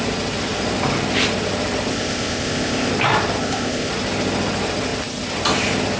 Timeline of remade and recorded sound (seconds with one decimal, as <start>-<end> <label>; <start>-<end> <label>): 0.0-1.9 recorded; 1.9-2.9 remade; 2.9-3.4 recorded; 3.4-3.9 remade; 3.9-6.0 recorded